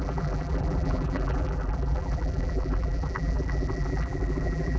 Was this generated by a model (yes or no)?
yes